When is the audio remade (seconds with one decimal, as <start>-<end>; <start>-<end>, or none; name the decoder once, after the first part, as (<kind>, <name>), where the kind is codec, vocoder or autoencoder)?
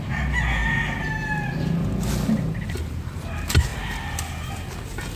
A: none